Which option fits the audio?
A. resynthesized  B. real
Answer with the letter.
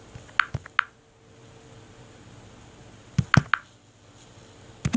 B